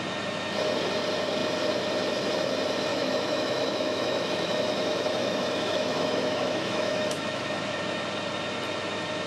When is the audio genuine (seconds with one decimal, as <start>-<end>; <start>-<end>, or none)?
0.0-2.9; 7.8-9.3

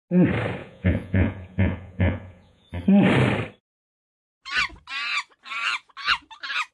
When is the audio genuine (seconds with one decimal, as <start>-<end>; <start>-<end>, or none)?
0.0-0.6; 2.7-6.7

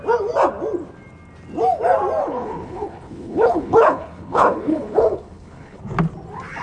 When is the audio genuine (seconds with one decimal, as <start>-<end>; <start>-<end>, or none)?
0.0-2.2; 5.8-6.6

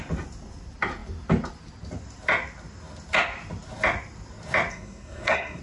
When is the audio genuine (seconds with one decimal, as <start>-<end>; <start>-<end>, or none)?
0.0-4.7

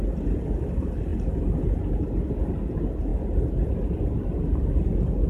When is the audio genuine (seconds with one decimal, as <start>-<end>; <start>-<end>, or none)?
0.0-5.3

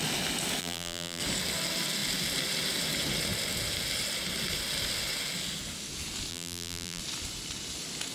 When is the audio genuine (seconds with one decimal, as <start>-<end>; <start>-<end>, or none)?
0.0-0.6; 1.2-6.3; 7.0-8.1

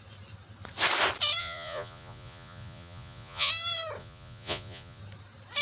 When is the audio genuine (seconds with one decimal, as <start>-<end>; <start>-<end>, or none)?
0.0-1.4; 3.5-4.0; 5.0-5.6

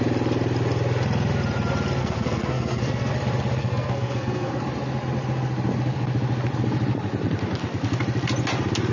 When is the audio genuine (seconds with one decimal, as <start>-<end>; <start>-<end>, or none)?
0.0-2.0; 3.1-3.6; 4.6-8.9